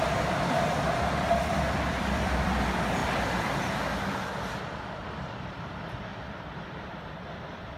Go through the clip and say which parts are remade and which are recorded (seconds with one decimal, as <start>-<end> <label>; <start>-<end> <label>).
0.0-3.0 remade; 3.0-4.6 recorded; 4.6-7.8 remade